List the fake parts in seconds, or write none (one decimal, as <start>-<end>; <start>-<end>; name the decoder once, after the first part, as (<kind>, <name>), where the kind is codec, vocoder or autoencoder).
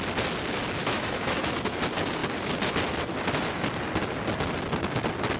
0.8-1.4 (autoencoder, DAC-VAE)